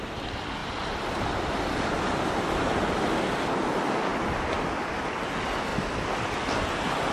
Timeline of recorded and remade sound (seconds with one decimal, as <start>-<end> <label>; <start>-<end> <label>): 0.0-0.6 recorded; 0.6-2.5 remade; 2.5-4.1 recorded; 4.1-4.9 remade; 4.9-7.1 recorded